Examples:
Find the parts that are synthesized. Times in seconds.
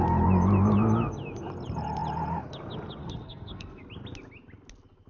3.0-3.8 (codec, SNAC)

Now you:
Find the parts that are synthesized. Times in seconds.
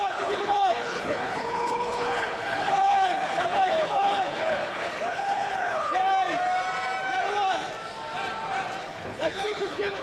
0.0-6.0 (codec, HILCodec); 8.8-10.0